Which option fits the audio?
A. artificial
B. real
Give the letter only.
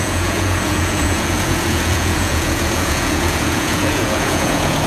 A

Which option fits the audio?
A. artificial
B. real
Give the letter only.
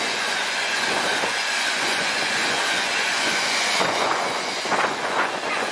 A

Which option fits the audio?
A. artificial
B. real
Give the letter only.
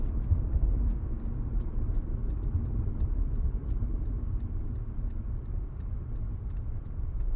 A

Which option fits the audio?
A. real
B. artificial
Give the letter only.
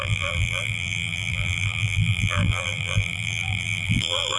B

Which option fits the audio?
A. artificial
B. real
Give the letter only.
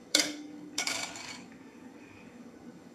A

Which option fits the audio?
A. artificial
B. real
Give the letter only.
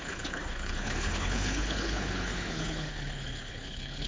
A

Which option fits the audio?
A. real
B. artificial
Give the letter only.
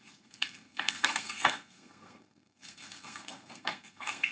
B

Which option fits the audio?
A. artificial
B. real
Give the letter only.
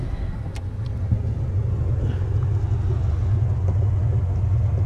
B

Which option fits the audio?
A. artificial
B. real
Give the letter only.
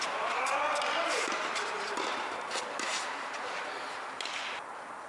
B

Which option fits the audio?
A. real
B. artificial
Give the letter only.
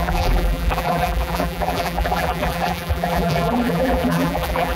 B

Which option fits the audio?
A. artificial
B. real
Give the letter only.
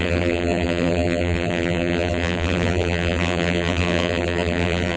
A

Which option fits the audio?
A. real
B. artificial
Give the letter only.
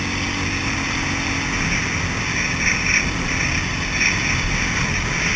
A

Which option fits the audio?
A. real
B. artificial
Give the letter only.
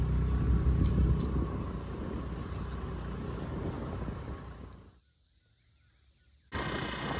A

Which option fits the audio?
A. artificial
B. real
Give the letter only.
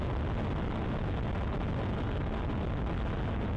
B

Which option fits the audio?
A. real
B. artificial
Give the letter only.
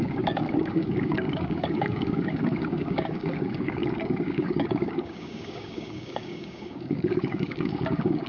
B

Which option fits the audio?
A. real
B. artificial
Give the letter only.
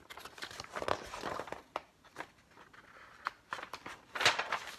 A